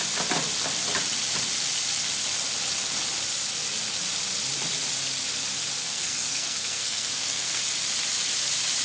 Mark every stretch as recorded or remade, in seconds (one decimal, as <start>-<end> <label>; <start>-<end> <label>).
0.0-5.8 recorded; 5.8-7.6 remade; 7.6-8.8 recorded